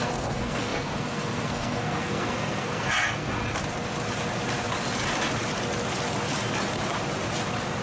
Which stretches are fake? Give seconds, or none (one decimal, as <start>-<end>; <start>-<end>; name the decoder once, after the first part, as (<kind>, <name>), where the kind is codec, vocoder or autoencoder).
0.0-3.4 (codec, SNAC)